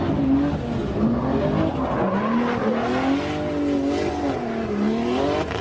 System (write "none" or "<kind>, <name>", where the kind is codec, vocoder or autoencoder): none